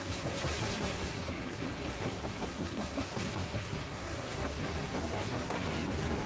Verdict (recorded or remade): remade